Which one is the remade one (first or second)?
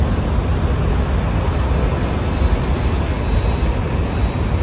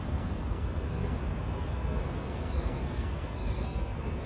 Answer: second